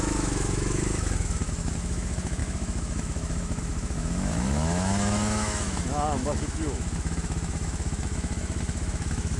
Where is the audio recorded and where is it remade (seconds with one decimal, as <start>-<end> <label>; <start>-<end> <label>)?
0.0-9.4 remade